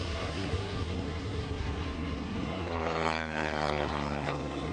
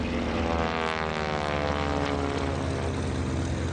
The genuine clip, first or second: second